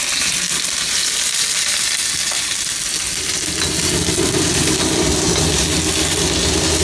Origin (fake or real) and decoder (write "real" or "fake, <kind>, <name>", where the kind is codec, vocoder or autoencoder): real